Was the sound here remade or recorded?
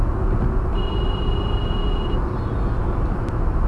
recorded